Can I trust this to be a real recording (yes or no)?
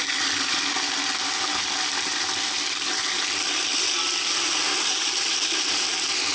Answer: yes